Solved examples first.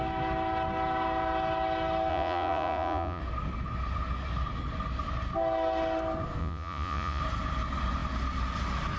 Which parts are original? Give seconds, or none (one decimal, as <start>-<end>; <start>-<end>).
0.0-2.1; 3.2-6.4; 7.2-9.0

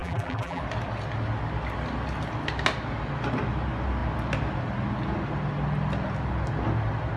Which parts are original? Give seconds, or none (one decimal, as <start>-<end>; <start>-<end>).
0.6-7.2

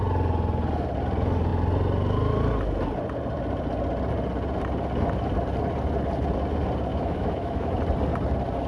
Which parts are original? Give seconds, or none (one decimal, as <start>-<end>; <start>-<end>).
0.0-6.9; 7.8-8.7